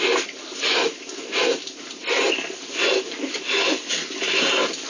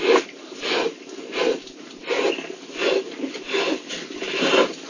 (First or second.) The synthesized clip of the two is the second